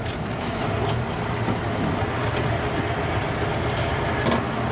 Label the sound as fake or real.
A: real